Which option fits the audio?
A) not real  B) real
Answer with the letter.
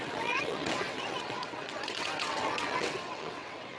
A